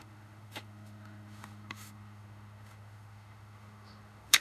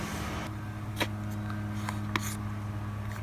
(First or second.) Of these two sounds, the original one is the second